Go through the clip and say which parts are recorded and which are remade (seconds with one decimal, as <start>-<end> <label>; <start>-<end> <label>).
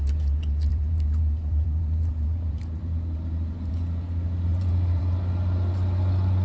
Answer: 0.0-0.7 recorded; 0.7-3.7 remade; 3.7-4.5 recorded; 4.5-5.0 remade; 5.0-6.4 recorded